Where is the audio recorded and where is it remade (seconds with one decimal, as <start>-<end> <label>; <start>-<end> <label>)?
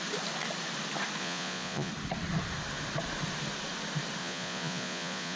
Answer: 0.0-1.2 recorded; 1.2-1.9 remade; 1.9-4.2 recorded; 4.2-5.4 remade